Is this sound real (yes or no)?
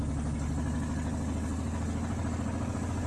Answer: yes